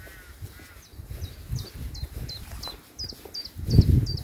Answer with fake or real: real